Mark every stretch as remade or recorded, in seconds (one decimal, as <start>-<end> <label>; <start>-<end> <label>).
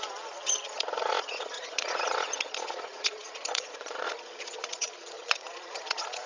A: 0.0-6.3 remade